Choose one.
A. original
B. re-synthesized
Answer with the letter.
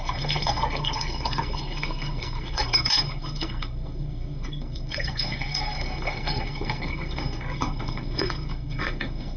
B